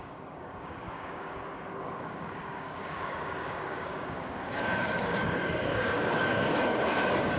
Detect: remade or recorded remade